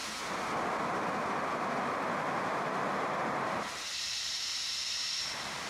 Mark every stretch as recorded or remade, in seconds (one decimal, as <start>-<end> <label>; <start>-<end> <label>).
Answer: 0.0-2.4 recorded; 2.4-4.5 remade; 4.5-5.0 recorded; 5.0-5.7 remade